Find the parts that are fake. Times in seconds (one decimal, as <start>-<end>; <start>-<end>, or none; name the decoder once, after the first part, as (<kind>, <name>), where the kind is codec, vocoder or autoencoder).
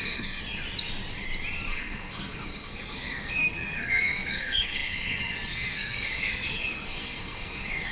0.0-0.4 (codec, SNAC); 1.7-7.9